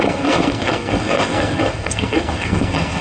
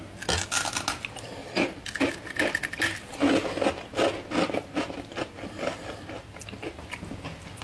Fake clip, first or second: first